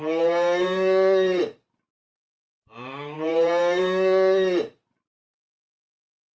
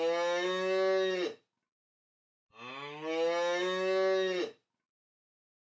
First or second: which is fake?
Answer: first